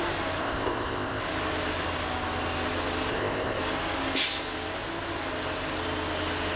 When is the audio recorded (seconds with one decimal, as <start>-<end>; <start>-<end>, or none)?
0.0-0.4; 1.2-3.1; 3.6-6.6